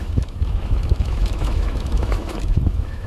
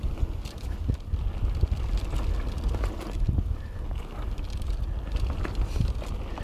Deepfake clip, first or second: first